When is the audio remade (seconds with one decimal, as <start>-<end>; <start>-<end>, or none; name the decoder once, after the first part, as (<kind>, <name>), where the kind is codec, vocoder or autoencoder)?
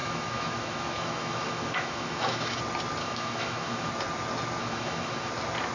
0.0-2.6 (autoencoder, DAC-VAE); 3.0-3.9; 4.6-5.3